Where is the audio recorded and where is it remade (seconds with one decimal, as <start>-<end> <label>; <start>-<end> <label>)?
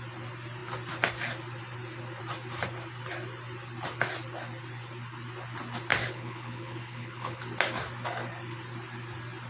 0.0-5.9 recorded; 5.9-7.4 remade; 7.4-9.5 recorded